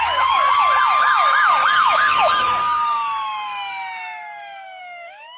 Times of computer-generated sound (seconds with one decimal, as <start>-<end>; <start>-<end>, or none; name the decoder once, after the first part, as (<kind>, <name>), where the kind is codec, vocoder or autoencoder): 0.0-5.4 (codec, DAC)